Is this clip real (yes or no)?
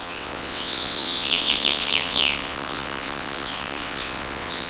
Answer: no